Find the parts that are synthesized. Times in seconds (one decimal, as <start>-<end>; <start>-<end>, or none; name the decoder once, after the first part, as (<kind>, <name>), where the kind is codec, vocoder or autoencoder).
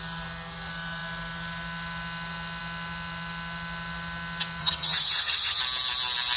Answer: 4.6-5.6 (vocoder, HiFi-GAN)